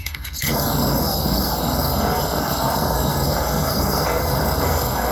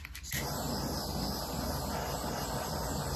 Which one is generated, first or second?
first